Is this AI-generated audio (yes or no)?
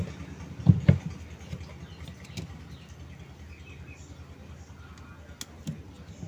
no